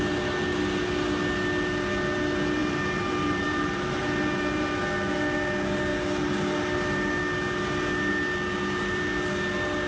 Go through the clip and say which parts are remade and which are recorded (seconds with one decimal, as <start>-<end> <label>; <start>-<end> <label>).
0.0-2.6 recorded; 2.6-4.7 remade; 4.7-9.9 recorded